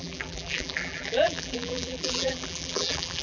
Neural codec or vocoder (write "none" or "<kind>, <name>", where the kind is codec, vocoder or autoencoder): vocoder, BigVGAN v2